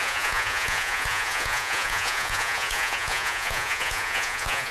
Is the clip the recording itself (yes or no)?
no